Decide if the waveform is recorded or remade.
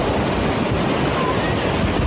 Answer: recorded